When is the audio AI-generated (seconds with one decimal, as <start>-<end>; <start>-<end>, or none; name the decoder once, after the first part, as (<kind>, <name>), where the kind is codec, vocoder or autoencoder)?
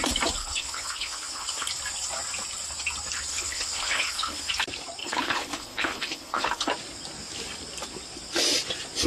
0.4-1.7 (codec, HILCodec); 3.3-4.5; 5.0-6.7